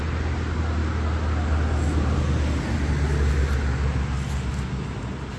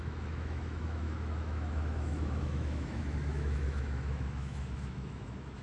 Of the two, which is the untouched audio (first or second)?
first